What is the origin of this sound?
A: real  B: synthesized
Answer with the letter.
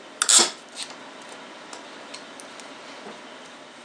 A